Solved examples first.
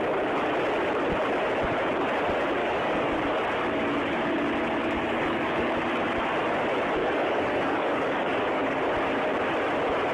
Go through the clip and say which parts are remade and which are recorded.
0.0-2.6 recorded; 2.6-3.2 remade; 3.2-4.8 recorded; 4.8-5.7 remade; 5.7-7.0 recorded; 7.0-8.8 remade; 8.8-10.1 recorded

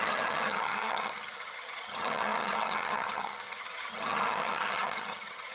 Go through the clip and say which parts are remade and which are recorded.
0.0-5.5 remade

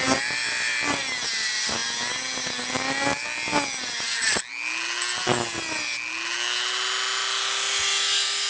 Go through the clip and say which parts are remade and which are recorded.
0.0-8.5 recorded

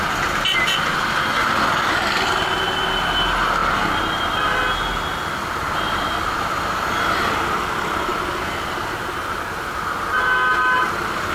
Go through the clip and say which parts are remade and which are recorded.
0.0-1.4 recorded; 1.4-1.9 remade; 1.9-8.1 recorded; 8.1-9.0 remade; 9.0-11.3 recorded

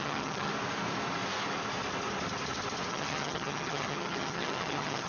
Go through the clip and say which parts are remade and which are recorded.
0.0-0.5 remade; 0.5-2.9 recorded; 2.9-5.1 remade

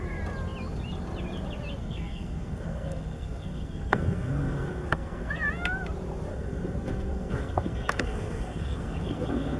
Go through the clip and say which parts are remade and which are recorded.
0.0-1.8 recorded; 1.8-5.3 remade; 5.3-6.3 recorded; 6.3-9.6 remade

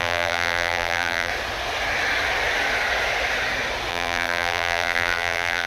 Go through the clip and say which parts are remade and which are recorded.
0.0-1.3 remade; 1.3-3.9 recorded; 3.9-5.7 remade